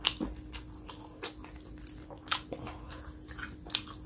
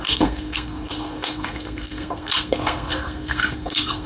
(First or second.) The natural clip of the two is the first